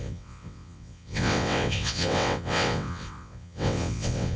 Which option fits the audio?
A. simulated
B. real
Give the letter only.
A